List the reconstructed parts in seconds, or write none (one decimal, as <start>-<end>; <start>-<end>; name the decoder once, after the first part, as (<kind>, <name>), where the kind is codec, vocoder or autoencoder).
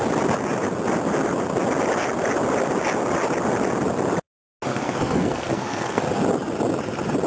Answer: 4.7-6.0 (codec, SNAC)